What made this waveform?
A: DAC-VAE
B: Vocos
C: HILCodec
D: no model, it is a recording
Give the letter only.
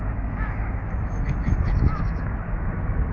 A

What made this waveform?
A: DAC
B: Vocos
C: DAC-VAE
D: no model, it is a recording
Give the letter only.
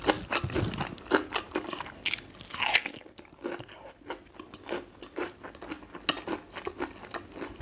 D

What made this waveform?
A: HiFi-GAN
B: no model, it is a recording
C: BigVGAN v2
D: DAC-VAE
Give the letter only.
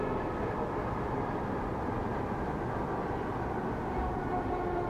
B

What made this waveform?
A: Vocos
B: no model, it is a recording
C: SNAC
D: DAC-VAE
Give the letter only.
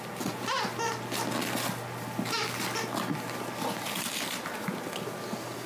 B